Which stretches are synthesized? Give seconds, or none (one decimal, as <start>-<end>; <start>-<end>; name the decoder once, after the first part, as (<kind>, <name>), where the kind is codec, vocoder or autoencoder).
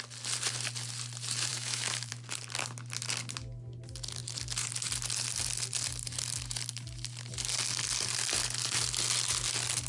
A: 1.5-2.1 (autoencoder, DAC-VAE)